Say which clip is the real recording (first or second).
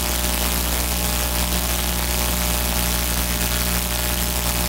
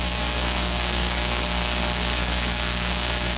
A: first